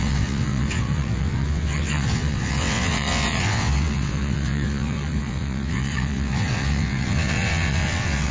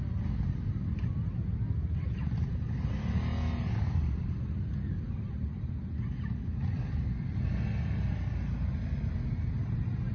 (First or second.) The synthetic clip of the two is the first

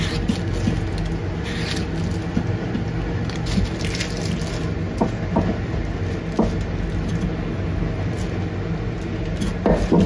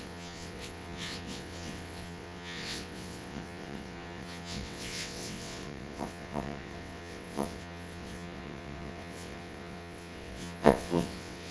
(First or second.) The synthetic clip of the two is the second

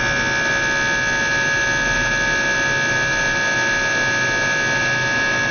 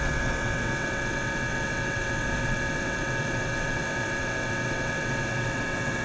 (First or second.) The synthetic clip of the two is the second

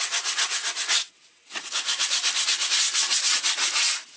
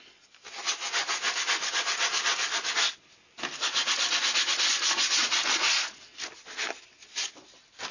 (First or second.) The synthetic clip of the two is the first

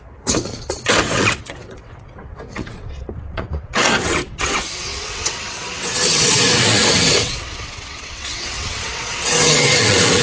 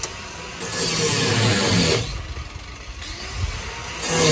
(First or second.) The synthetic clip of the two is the first